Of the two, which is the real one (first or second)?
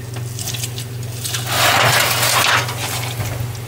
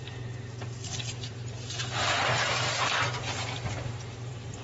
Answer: first